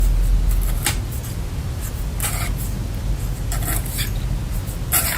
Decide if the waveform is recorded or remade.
recorded